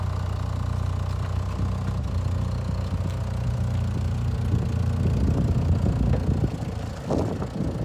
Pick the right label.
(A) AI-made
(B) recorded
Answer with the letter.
B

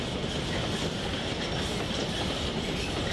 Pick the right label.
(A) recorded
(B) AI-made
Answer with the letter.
A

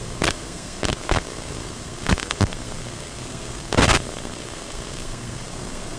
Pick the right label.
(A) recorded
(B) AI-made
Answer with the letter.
B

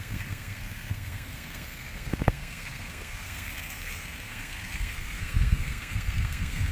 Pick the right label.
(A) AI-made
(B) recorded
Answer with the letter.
A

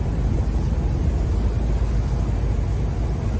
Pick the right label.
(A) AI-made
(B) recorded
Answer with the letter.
B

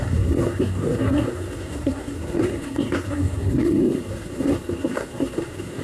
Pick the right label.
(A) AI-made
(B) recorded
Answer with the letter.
A